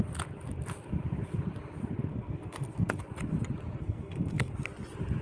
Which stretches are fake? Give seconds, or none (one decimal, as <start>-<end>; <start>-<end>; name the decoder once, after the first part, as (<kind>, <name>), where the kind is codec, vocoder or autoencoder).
2.1-3.0 (codec, SNAC); 3.8-4.5